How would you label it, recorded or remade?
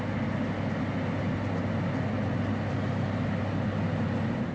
recorded